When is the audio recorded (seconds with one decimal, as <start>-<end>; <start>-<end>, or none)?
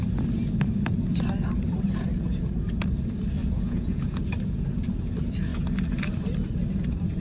0.0-3.4; 4.2-7.2